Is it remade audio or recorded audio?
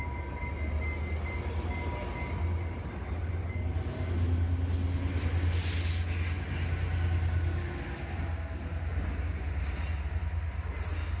recorded